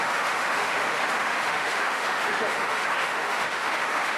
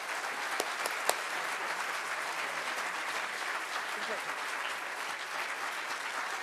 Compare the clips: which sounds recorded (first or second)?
second